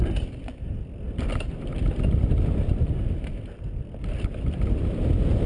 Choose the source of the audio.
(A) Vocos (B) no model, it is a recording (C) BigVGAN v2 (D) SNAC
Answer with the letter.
B